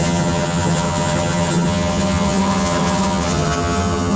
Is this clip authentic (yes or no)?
no